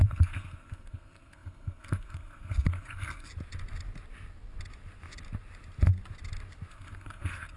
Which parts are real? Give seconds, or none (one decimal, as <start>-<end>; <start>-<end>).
3.3-6.7